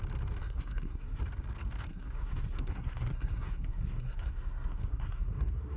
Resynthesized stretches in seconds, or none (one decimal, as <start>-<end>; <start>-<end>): 0.4-1.2; 1.9-5.8

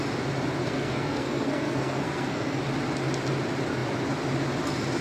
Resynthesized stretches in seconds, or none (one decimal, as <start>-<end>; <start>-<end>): 0.6-2.6

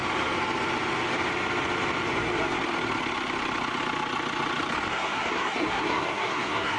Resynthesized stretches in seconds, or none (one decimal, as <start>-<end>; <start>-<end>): 4.9-6.8